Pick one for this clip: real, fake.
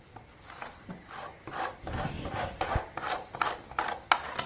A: real